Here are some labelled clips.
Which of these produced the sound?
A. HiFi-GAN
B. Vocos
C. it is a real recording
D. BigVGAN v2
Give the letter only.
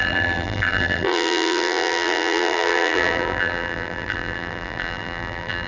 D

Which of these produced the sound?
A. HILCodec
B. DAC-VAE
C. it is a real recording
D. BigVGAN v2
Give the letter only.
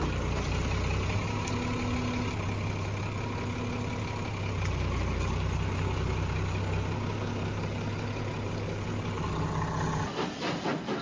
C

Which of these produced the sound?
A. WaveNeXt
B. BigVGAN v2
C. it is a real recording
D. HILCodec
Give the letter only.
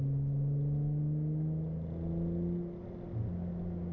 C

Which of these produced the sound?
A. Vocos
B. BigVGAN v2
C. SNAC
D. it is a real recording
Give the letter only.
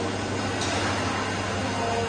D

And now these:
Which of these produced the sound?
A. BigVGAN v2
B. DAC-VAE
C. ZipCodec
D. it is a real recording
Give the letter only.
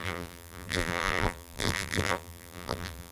A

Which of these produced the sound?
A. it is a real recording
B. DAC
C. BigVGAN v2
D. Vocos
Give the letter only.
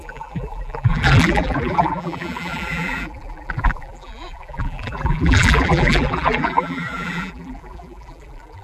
C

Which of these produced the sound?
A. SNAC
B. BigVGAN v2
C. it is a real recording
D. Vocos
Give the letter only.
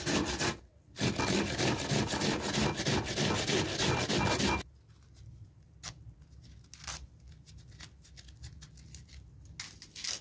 C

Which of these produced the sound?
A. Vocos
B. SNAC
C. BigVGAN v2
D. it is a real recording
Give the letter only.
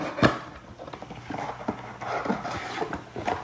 D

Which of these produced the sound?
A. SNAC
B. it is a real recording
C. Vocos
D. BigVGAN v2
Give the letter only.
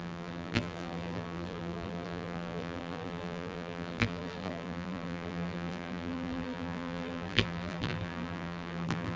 D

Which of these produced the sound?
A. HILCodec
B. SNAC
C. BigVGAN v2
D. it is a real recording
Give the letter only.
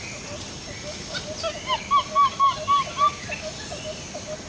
C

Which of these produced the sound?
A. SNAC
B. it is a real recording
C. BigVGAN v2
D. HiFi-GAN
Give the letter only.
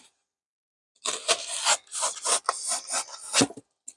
B